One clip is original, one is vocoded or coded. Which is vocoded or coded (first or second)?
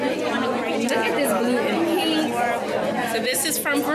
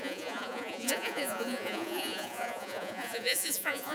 second